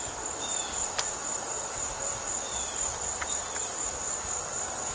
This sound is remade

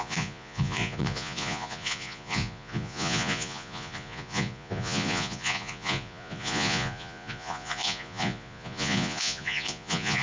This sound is remade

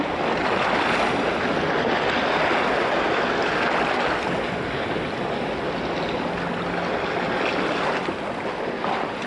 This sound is recorded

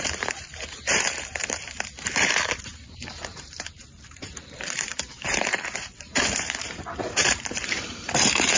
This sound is remade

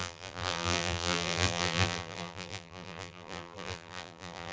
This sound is remade